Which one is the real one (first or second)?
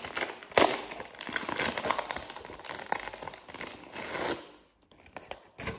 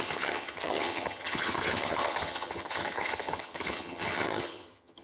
first